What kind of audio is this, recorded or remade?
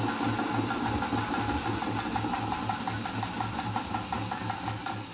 recorded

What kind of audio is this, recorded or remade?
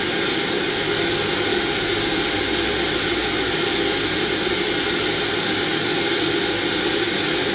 recorded